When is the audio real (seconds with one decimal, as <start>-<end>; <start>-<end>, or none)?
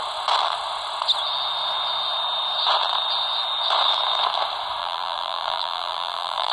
0.0-4.8